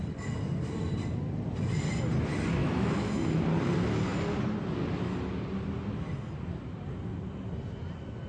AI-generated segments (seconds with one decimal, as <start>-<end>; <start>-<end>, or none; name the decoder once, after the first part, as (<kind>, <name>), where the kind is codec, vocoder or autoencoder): 2.6-3.4 (autoencoder, DAC-VAE)